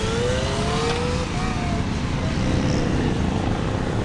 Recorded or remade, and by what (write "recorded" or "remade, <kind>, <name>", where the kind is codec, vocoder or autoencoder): recorded